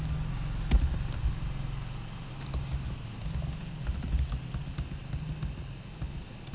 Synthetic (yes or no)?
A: no